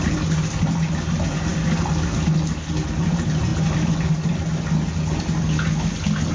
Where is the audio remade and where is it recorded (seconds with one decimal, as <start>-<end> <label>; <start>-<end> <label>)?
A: 0.0-6.3 recorded